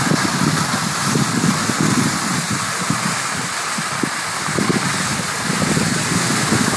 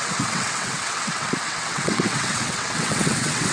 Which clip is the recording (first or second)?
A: first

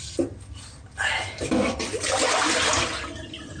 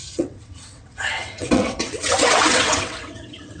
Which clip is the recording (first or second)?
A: first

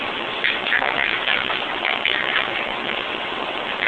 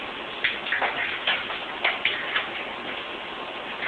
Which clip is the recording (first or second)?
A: second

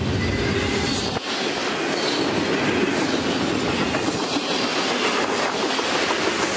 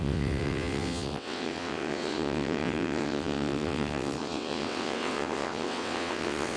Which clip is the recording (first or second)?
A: first